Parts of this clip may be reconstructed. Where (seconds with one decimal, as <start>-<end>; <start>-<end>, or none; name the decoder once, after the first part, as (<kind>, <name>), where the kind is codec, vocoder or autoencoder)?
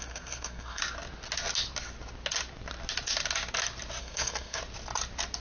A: 0.0-0.8 (codec, SNAC); 4.0-4.6